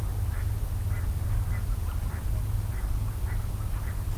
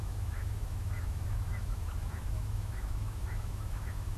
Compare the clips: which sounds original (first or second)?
first